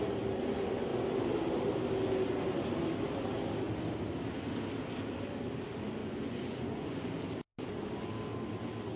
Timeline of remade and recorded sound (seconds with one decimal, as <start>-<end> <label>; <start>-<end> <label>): 0.0-6.0 recorded; 6.0-7.1 remade; 7.1-9.0 recorded